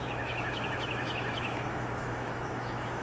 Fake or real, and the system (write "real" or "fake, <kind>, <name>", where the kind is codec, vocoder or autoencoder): fake, autoencoder, DAC-VAE